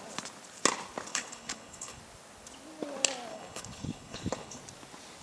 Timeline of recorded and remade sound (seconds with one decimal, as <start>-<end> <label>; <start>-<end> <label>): 0.0-1.1 recorded; 1.1-2.0 remade; 2.0-3.3 recorded; 3.3-4.6 remade; 4.6-5.2 recorded